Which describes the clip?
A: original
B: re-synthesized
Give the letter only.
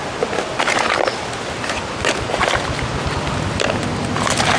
A